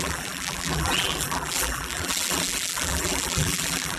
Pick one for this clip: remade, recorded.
remade